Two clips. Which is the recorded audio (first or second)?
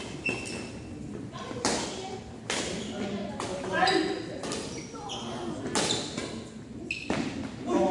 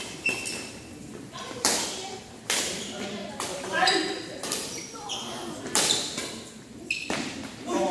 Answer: first